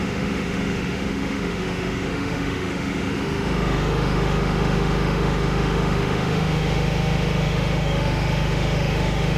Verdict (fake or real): fake